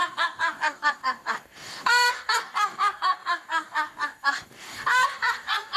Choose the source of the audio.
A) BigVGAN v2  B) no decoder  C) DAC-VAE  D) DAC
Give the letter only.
D